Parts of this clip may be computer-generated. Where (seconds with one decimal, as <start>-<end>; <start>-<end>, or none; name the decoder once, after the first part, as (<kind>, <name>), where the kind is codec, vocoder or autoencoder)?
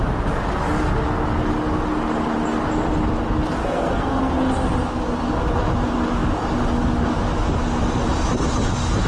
3.6-4.3 (codec, SNAC)